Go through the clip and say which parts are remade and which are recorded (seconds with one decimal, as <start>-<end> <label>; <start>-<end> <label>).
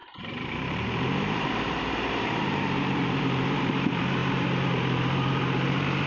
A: 0.0-6.1 remade